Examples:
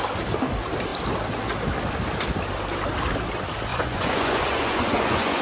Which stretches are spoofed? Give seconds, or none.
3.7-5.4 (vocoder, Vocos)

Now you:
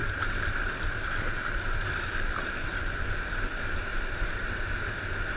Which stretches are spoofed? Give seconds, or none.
none

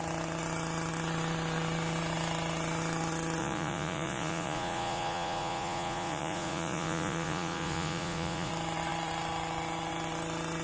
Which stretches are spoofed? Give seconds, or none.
3.4-8.5 (vocoder, Vocos)

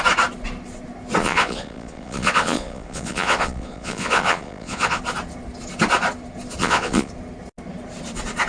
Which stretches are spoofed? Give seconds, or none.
1.2-5.0 (vocoder, Vocos); 6.6-7.1